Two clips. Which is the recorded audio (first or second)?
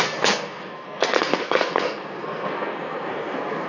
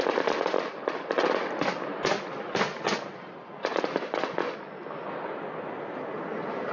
second